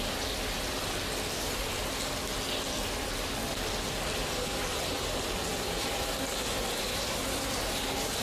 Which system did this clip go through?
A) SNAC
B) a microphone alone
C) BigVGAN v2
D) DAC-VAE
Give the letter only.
B